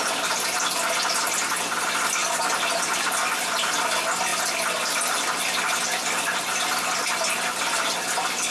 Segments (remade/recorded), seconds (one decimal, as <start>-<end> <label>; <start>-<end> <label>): 0.0-8.5 recorded